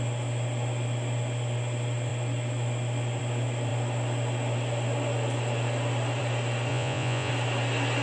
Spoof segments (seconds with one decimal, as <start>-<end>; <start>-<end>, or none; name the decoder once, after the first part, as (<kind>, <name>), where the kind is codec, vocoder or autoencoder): 6.7-7.3 (vocoder, Vocos)